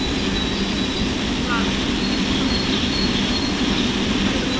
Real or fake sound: real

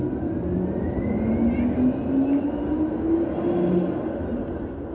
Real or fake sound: real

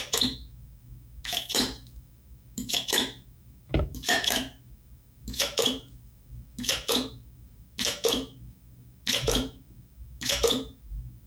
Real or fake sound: fake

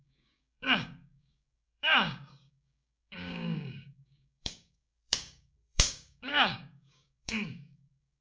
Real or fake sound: fake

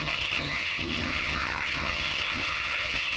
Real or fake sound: fake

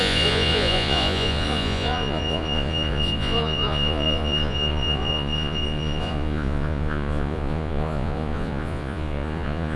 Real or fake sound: fake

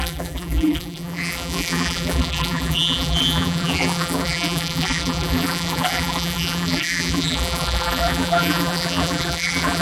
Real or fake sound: fake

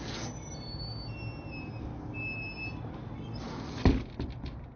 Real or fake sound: real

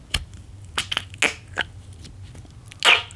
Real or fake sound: real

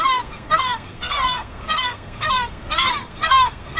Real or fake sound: fake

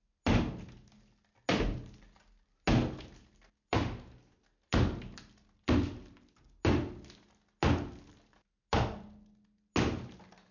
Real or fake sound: real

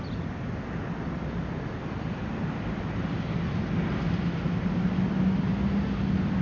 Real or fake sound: real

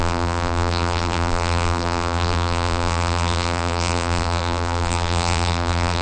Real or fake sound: fake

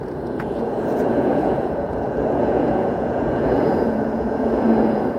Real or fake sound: fake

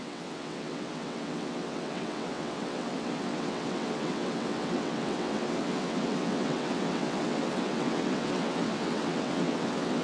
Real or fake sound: fake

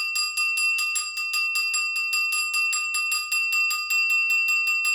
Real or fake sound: real